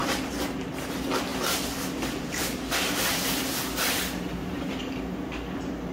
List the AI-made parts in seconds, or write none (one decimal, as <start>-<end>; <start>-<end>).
0.0-0.7; 1.3-4.8